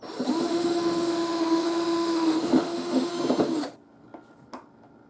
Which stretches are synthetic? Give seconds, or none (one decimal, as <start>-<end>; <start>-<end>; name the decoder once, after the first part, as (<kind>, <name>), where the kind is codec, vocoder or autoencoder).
0.5-3.1 (autoencoder, DAC-VAE)